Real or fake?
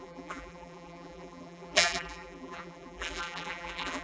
fake